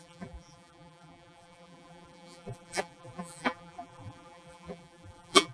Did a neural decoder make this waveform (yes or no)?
yes